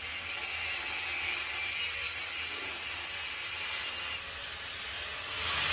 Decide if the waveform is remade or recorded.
recorded